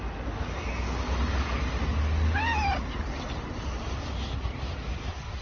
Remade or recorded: recorded